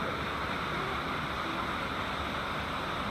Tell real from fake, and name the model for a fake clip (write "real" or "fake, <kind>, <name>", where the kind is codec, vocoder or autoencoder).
real